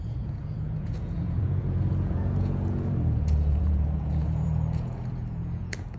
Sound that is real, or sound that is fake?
fake